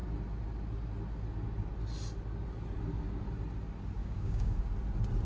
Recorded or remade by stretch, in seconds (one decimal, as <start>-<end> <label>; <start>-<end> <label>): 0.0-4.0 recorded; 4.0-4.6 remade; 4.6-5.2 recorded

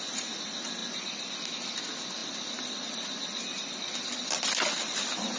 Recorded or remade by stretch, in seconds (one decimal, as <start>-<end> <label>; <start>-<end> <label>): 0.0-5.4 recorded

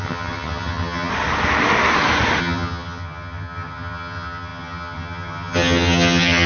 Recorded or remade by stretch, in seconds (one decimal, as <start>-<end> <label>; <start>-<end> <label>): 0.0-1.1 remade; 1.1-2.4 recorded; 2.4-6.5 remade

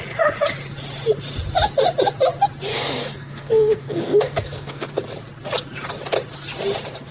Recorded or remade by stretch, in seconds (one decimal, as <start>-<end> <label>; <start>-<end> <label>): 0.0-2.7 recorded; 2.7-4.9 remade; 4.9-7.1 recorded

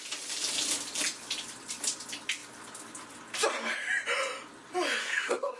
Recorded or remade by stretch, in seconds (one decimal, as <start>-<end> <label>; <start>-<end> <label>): 0.0-5.0 recorded; 5.0-5.6 remade

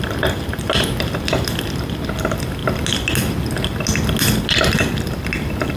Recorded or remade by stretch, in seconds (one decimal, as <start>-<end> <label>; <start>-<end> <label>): 0.0-5.8 recorded